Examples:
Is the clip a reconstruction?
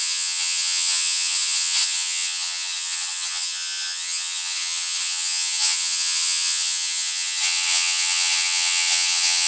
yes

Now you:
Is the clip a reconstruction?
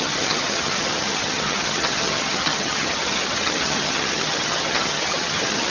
yes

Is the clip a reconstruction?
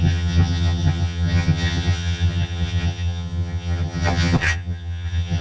yes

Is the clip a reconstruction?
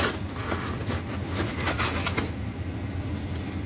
no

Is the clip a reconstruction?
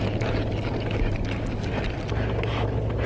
no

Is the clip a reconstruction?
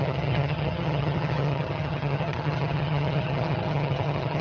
yes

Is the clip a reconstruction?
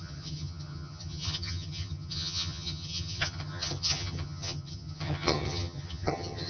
yes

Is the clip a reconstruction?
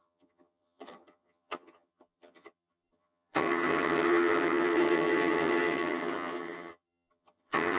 yes